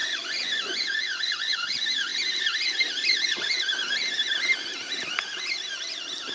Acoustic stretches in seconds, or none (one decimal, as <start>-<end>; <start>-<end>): 1.7-6.3